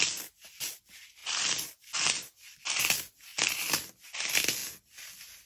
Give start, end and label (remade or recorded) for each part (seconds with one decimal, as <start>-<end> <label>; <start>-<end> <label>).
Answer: 0.0-1.2 recorded; 1.2-2.8 remade; 2.8-3.3 recorded; 3.3-4.0 remade; 4.0-5.5 recorded